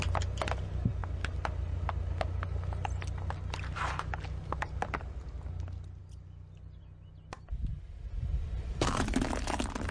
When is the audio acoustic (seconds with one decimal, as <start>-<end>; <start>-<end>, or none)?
0.0-9.9